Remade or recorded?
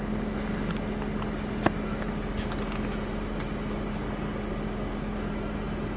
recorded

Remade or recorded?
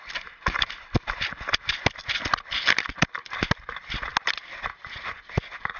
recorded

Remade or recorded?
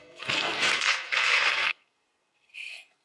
remade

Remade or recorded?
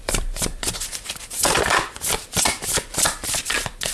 remade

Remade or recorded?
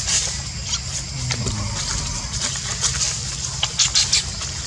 recorded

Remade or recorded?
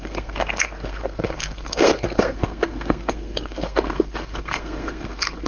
remade